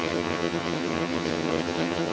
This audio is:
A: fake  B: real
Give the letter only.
A